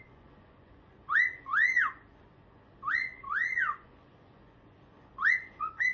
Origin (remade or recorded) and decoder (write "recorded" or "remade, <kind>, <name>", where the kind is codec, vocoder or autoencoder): remade, vocoder, Vocos